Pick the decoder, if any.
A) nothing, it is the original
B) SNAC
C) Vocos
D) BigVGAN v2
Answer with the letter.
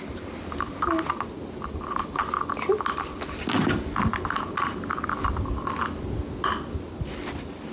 A